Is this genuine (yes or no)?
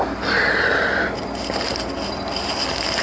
yes